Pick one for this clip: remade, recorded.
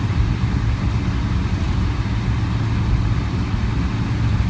recorded